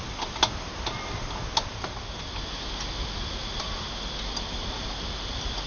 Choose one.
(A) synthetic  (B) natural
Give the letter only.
B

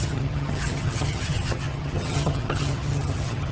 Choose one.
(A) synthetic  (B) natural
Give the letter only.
A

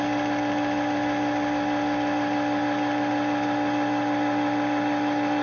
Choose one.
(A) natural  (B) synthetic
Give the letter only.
A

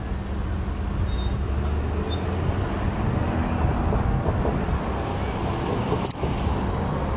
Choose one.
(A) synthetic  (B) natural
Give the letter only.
B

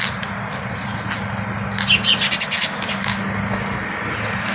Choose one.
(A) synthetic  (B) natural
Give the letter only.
B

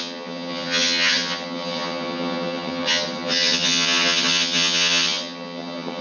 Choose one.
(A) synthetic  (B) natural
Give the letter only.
A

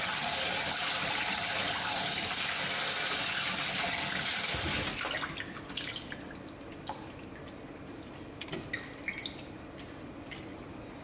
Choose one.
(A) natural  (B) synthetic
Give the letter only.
A